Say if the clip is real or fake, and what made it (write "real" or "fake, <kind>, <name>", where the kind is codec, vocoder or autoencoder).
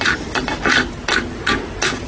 real